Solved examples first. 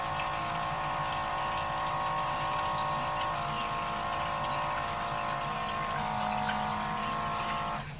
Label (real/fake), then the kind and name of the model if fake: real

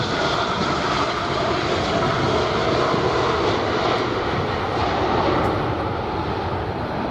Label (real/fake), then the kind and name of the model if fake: real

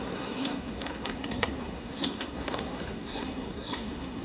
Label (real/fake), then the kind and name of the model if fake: fake, codec, SNAC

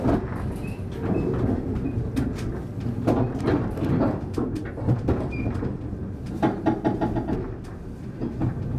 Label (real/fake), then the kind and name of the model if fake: real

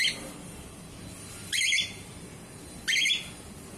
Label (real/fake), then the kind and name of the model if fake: real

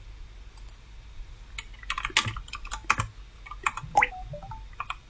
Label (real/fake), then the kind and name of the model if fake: real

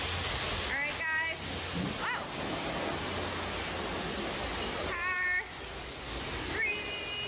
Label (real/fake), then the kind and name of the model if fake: real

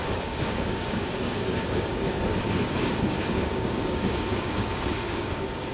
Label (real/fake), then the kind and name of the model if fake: fake, codec, DAC